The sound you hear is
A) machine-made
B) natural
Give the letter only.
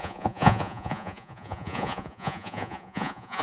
A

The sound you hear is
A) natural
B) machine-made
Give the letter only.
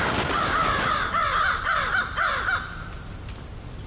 A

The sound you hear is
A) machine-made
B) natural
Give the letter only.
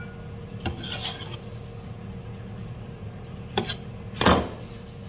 B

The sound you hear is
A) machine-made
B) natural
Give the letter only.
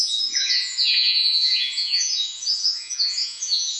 A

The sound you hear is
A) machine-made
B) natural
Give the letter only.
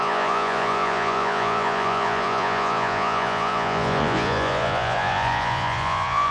A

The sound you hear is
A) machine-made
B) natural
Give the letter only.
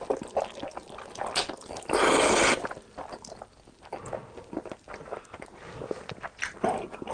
B